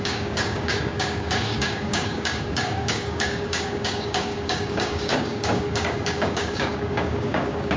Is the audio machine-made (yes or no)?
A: yes